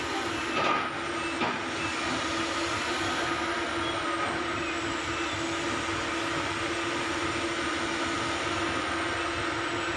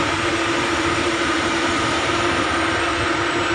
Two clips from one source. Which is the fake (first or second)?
second